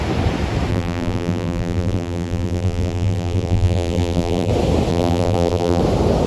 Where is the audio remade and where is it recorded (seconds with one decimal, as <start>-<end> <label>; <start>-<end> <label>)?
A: 0.0-0.7 recorded; 0.7-4.5 remade; 4.5-4.9 recorded; 4.9-5.8 remade; 5.8-6.3 recorded